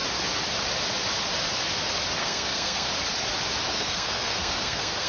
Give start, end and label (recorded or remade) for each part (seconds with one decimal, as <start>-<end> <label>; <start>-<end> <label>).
0.0-2.2 recorded; 2.2-2.9 remade; 2.9-3.7 recorded; 3.7-5.1 remade